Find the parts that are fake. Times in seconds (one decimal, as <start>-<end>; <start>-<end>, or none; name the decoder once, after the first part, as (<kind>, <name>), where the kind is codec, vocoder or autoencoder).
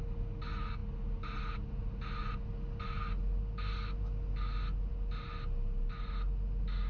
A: none